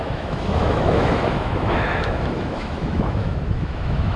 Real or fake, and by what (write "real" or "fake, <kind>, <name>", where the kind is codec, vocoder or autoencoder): fake, autoencoder, DAC-VAE